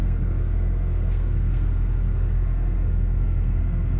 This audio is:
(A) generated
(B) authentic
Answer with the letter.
A